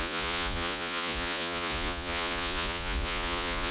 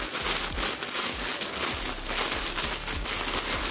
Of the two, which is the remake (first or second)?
first